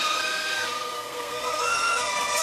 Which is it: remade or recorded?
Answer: remade